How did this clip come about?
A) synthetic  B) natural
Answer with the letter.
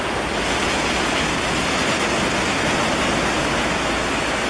B